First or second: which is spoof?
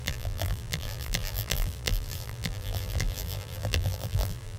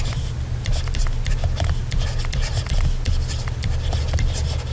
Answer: first